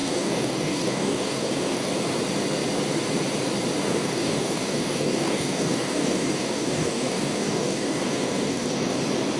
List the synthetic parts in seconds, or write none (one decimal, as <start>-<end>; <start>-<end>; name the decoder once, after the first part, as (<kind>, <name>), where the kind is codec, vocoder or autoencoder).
0.0-1.9 (codec, DAC); 3.8-9.0